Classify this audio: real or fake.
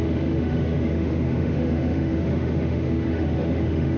fake